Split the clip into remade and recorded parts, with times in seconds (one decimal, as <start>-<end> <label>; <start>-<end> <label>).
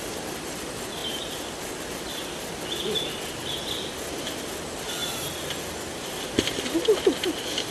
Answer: 0.0-7.7 recorded